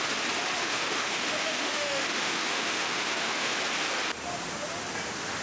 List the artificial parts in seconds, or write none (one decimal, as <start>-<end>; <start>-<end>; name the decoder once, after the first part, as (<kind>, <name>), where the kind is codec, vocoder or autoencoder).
0.6-3.6 (autoencoder, DAC-VAE)